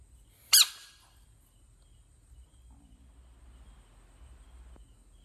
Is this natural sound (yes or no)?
yes